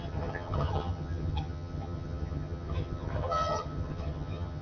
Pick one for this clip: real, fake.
fake